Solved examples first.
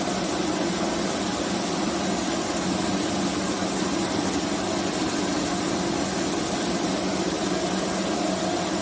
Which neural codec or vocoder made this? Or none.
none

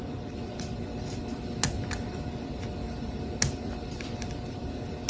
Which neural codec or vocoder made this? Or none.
none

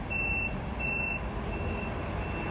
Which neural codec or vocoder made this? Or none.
none